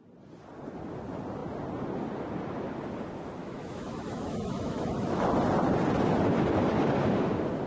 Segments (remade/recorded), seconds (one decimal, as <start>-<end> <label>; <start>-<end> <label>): 0.0-3.4 recorded; 3.4-5.3 remade; 5.3-7.7 recorded